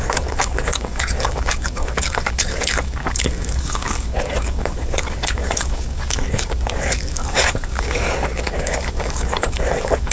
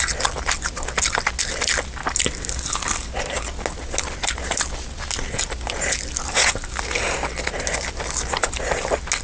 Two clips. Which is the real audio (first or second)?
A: second